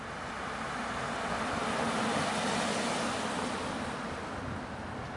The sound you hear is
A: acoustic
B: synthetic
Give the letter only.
A